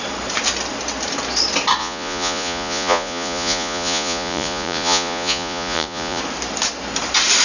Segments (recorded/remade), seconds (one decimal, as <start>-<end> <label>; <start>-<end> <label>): 0.0-1.8 recorded; 1.8-6.2 remade; 6.2-7.4 recorded